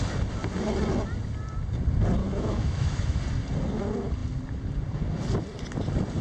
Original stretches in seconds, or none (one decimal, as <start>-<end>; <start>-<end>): 0.0-2.2; 3.2-6.2